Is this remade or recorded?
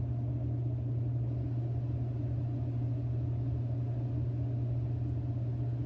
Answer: recorded